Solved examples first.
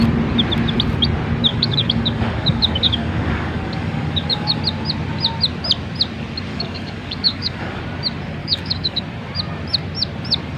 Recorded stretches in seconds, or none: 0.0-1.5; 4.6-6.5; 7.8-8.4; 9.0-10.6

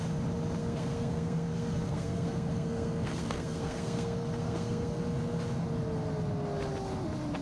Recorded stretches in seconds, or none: 0.0-0.6; 5.0-7.4

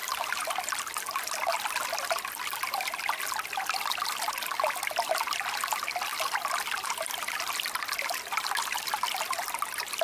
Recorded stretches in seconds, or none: 0.0-10.0

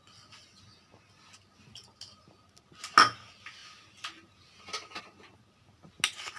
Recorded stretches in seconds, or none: 0.0-6.4